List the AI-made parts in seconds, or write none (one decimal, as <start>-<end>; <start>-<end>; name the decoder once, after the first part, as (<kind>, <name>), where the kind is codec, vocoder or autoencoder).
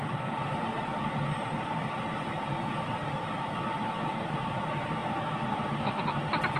none